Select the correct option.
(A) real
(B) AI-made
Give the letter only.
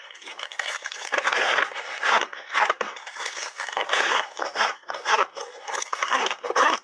B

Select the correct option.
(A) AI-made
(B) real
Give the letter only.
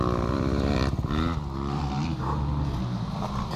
B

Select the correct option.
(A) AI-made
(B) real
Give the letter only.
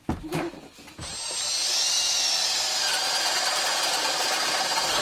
B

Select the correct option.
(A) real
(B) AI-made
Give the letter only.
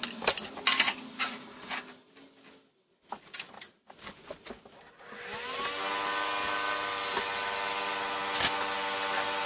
A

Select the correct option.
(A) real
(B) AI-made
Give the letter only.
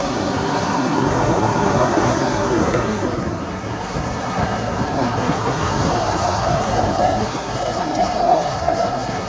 B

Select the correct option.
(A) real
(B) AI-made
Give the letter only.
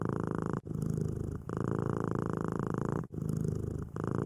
A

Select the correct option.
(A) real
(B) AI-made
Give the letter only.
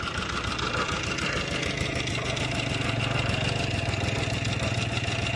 A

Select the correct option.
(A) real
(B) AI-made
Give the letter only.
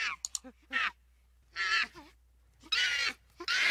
A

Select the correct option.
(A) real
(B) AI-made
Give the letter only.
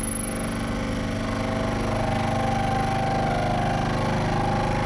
A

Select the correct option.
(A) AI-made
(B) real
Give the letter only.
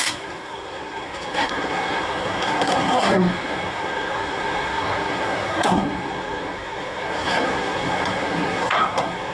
A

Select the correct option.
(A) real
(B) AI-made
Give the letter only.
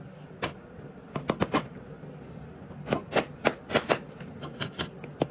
A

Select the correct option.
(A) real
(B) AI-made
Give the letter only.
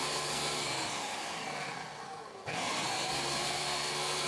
B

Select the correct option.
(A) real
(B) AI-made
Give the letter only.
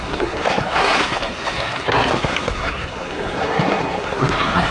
B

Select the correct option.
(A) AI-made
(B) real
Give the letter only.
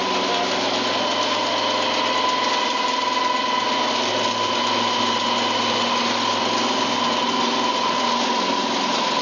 B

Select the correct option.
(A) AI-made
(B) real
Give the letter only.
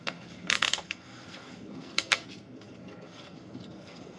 A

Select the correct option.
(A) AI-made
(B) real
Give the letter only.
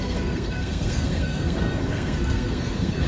A